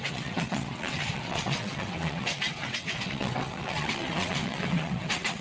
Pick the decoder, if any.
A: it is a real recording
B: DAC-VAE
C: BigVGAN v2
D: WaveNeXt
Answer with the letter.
D